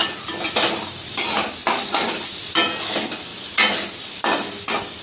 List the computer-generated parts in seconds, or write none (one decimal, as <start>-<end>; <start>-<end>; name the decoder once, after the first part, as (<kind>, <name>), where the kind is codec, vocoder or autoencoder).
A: none